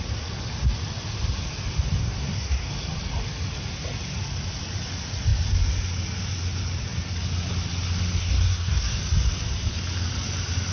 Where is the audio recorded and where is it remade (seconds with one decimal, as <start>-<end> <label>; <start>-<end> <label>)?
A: 0.0-2.0 recorded; 2.0-2.7 remade; 2.7-8.2 recorded; 8.2-9.0 remade; 9.0-10.7 recorded